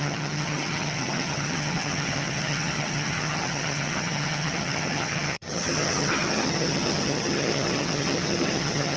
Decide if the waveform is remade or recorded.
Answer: remade